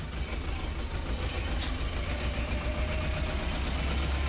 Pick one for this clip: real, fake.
real